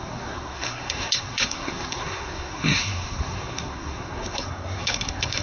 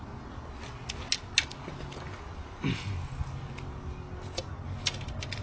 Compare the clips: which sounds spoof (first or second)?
first